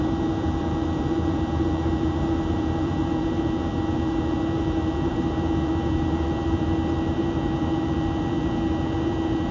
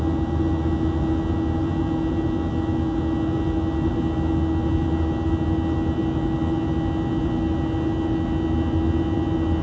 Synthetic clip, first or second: first